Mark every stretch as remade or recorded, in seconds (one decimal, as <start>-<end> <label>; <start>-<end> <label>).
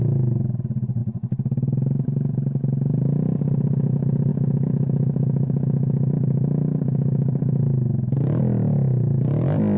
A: 0.0-4.3 recorded; 4.3-8.4 remade; 8.4-9.8 recorded